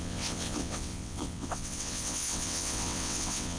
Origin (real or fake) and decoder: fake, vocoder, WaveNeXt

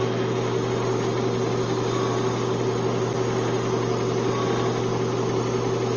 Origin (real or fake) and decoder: real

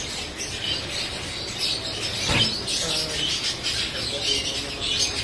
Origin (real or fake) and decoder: real